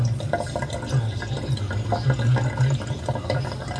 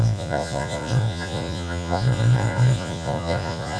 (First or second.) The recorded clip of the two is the first